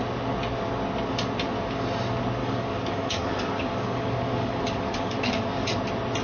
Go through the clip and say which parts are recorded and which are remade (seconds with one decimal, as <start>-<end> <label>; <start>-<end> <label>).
0.0-2.4 recorded; 2.4-5.8 remade; 5.8-6.2 recorded